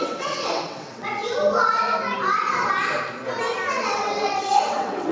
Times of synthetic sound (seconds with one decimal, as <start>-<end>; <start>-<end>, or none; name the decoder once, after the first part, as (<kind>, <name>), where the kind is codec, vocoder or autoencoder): 0.0-1.2 (vocoder, WaveNeXt); 3.7-5.1